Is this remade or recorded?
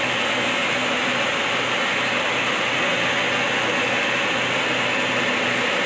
recorded